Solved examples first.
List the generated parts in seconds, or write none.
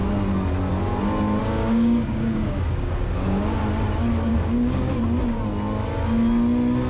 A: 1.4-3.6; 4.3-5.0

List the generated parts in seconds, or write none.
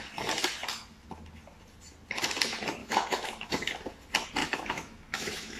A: 2.8-3.7; 4.4-5.6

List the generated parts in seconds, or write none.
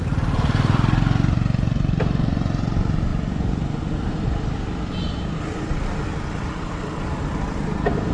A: none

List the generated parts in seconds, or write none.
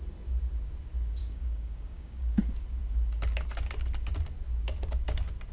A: 1.2-2.4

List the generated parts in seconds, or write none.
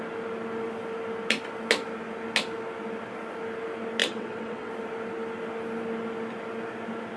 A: 4.0-4.7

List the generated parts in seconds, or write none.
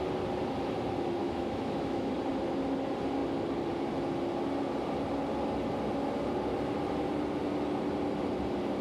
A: 1.2-2.1